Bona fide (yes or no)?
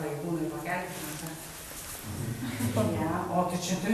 yes